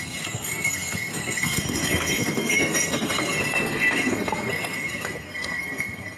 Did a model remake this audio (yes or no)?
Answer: yes